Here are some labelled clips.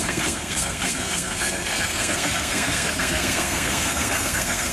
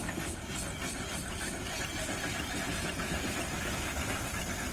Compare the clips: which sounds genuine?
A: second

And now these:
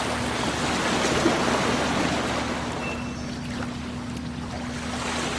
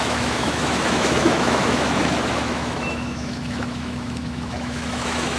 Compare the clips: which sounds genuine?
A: first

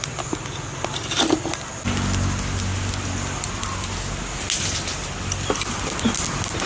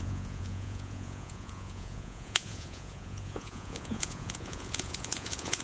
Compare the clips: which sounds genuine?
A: first